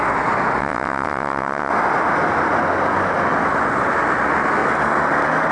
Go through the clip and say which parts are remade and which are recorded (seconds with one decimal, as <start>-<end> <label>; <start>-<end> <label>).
0.0-0.6 recorded; 0.6-1.7 remade; 1.7-5.5 recorded

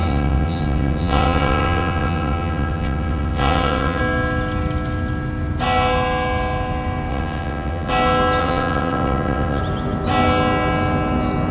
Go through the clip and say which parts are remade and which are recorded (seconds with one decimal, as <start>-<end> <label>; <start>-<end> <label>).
0.0-4.0 remade; 4.0-7.1 recorded; 7.1-7.9 remade; 7.9-8.4 recorded; 8.4-9.6 remade; 9.6-11.5 recorded

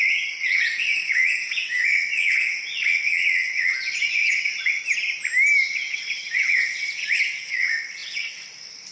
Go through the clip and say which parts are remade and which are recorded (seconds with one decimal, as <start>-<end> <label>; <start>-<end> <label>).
0.0-4.8 remade; 4.8-5.7 recorded; 5.7-8.9 remade

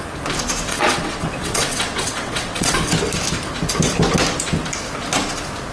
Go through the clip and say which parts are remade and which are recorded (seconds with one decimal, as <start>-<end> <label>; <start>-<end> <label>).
0.0-0.7 recorded; 0.7-2.9 remade; 2.9-5.7 recorded

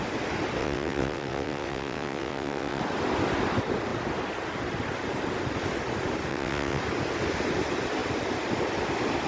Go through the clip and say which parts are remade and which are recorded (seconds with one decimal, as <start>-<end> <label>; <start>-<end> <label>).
0.0-0.6 recorded; 0.6-2.8 remade; 2.8-6.3 recorded; 6.3-6.8 remade; 6.8-9.3 recorded

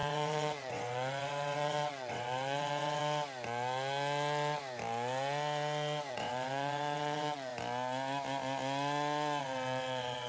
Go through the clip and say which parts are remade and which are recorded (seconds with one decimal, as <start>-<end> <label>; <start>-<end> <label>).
0.0-3.0 remade; 3.0-6.1 recorded; 6.1-7.5 remade; 7.5-9.4 recorded; 9.4-10.3 remade